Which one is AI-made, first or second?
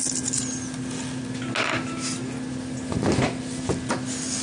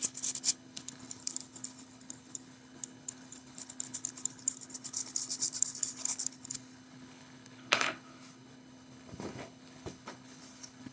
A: second